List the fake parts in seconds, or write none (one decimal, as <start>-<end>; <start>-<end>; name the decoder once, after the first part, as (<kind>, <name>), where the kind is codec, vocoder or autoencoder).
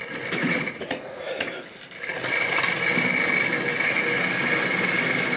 0.4-1.4 (vocoder, Vocos)